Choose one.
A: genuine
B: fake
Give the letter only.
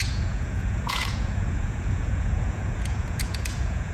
B